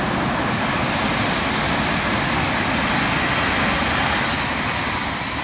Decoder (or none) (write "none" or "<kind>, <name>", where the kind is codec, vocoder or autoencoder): none